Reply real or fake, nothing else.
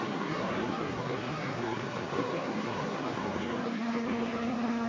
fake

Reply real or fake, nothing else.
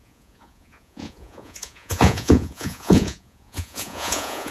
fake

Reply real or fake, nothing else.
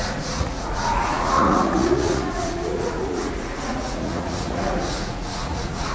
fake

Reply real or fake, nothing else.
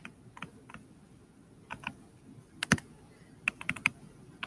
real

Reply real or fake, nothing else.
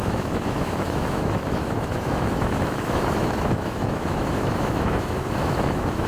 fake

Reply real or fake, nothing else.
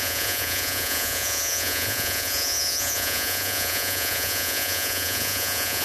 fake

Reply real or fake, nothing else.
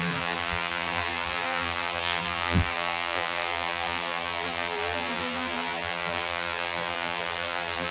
fake